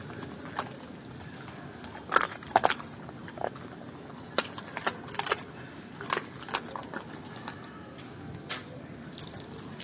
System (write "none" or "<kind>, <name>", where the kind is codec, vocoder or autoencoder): none